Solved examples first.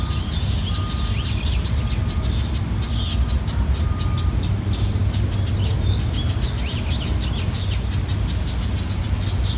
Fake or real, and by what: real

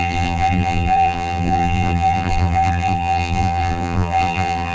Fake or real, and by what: fake, vocoder, BigVGAN v2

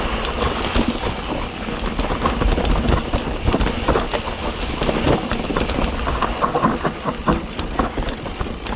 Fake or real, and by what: real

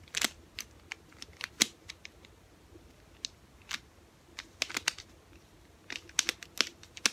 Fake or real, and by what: real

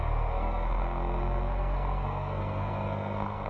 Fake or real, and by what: fake, codec, SNAC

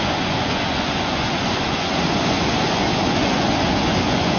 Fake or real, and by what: fake, vocoder, Vocos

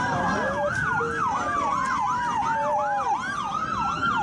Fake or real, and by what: real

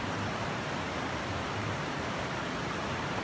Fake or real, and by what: fake, vocoder, BigVGAN v2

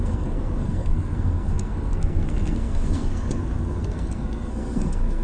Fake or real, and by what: fake, codec, SNAC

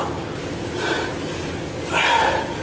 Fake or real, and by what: real